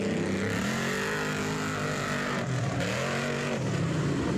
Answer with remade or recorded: recorded